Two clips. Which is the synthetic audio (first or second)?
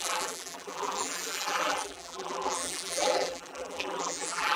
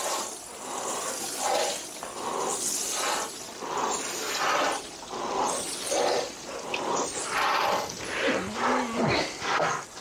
first